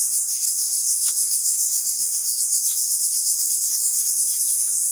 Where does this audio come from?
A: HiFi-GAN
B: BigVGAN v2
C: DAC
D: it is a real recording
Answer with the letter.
C